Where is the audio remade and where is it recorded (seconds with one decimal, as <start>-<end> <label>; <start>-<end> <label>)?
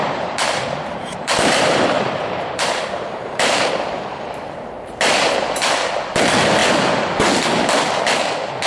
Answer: 0.0-3.7 remade; 3.7-8.7 recorded